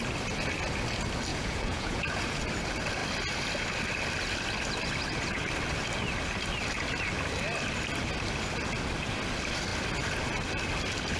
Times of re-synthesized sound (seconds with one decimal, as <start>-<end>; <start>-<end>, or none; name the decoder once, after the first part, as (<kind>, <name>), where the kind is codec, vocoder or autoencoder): 1.3-2.4 (vocoder, Vocos)